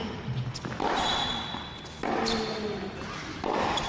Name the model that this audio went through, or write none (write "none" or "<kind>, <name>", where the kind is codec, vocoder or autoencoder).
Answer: none